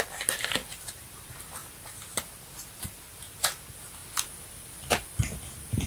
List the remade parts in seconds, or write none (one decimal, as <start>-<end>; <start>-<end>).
0.0-4.0; 4.5-5.9